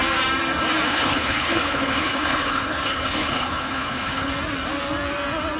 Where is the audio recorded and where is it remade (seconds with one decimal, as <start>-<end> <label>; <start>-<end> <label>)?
0.0-0.9 recorded; 0.9-4.3 remade; 4.3-5.6 recorded